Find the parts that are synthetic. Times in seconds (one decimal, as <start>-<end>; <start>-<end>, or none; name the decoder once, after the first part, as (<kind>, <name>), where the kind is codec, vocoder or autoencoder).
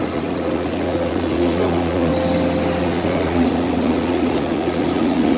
0.0-2.1 (vocoder, Vocos); 2.8-5.4